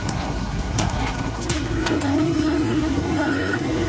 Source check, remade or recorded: remade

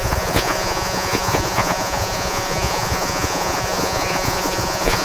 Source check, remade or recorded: remade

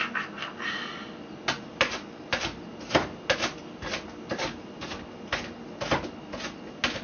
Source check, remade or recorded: recorded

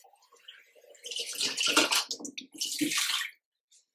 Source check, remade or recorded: recorded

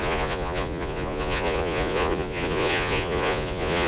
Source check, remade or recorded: remade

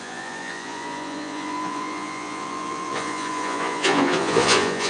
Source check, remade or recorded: remade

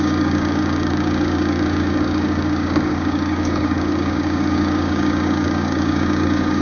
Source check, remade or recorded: remade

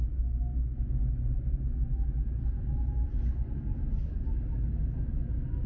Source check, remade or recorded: recorded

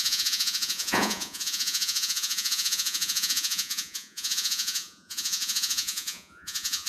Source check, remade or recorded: remade